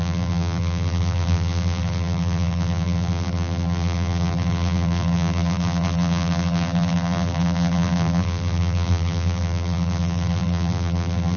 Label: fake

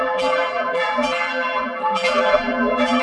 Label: fake